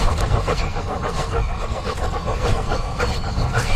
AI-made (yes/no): yes